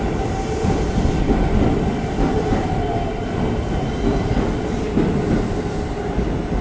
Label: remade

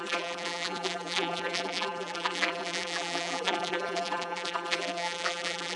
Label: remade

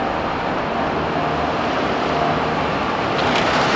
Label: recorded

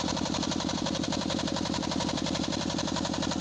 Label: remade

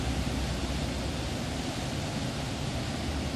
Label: recorded